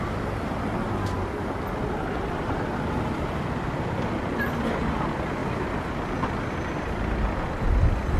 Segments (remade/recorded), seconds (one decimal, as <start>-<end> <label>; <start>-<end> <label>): 0.0-8.2 recorded